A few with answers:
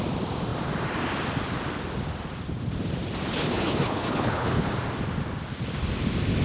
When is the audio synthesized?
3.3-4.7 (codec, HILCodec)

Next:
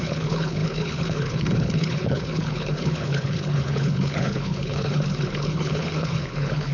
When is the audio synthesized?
0.0-6.7 (codec, HILCodec)

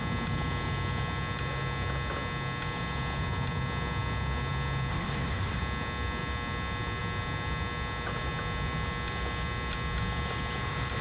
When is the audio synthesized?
4.9-5.6 (codec, HILCodec)

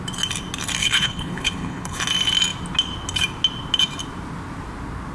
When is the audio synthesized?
0.8-2.0 (codec, HILCodec)

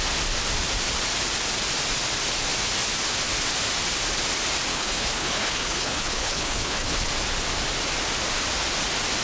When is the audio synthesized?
4.7-7.1 (codec, HILCodec)

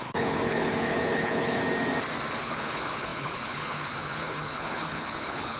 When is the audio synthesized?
0.0-1.6 (codec, HILCodec); 2.4-5.6